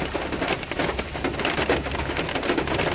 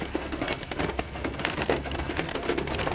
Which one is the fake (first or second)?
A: second